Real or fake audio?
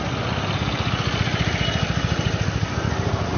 real